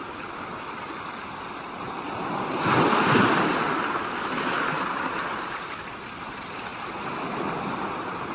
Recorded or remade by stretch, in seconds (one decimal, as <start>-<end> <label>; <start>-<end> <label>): 0.0-8.3 recorded